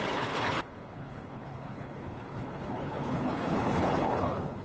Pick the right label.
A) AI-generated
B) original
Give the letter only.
A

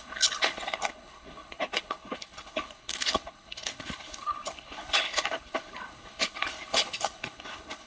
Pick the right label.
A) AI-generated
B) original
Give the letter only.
A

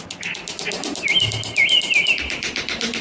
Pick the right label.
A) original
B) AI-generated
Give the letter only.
A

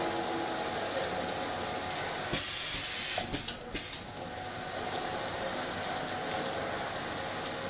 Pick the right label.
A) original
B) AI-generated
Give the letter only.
A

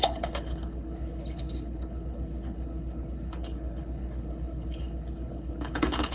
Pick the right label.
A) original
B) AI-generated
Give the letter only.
B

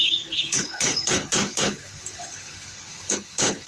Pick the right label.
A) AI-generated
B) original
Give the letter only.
A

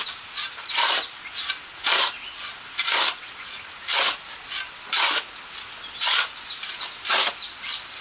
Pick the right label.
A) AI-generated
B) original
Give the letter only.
B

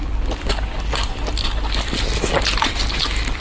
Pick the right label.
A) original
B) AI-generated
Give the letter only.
A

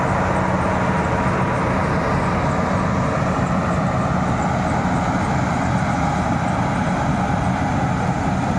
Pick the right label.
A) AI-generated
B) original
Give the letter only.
B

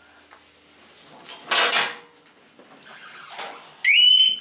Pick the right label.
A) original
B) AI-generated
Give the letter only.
A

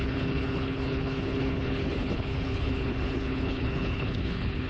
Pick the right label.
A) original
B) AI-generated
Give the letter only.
B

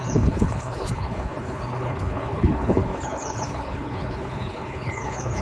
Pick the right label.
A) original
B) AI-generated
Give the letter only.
B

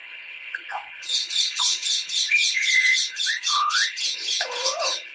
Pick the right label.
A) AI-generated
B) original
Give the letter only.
A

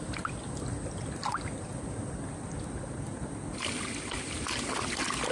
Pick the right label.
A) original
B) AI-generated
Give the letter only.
A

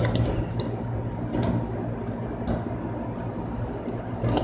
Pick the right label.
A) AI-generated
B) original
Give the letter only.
B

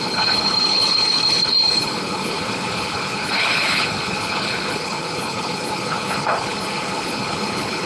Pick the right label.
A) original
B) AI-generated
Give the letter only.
B